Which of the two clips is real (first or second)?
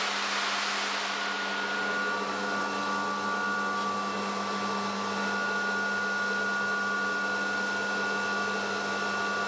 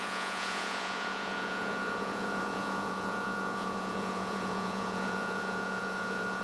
first